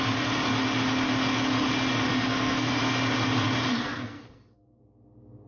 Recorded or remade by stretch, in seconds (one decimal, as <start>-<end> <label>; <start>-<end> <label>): 0.0-2.1 recorded; 2.1-2.8 remade; 2.8-3.7 recorded; 3.7-4.8 remade; 4.8-5.5 recorded

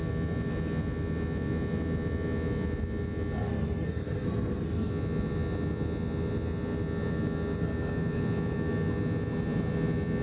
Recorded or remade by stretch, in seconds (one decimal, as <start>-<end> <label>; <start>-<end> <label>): 0.0-3.4 recorded; 3.4-4.9 remade; 4.9-10.2 recorded

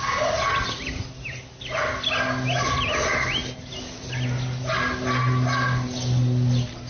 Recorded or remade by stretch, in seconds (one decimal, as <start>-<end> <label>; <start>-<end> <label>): 0.0-6.9 recorded

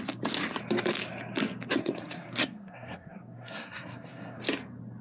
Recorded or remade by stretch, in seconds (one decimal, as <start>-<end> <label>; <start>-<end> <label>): 0.0-1.8 recorded; 1.8-4.4 remade; 4.4-5.0 recorded

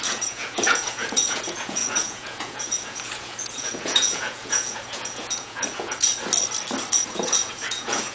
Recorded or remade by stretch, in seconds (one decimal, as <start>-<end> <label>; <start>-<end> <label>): 0.0-6.1 remade; 6.1-6.9 recorded; 6.9-8.1 remade

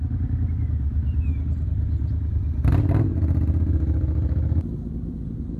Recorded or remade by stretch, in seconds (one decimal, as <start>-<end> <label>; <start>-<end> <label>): 0.0-5.6 recorded

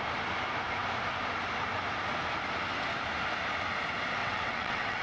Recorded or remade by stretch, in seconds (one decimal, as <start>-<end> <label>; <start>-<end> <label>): 0.0-4.2 recorded; 4.2-5.0 remade